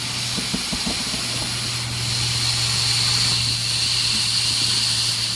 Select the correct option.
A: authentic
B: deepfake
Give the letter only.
A